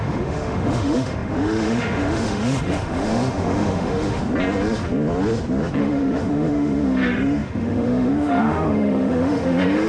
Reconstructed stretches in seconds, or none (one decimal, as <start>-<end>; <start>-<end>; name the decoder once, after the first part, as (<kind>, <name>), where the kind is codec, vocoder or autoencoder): 0.0-4.2 (autoencoder, DAC-VAE); 5.8-9.9